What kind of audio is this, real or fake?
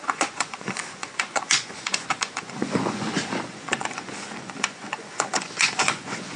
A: fake